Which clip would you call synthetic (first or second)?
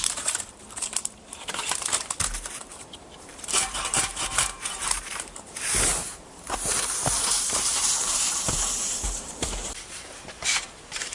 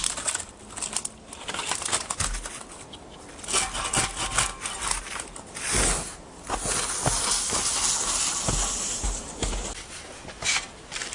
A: first